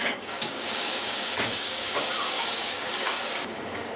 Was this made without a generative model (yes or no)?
no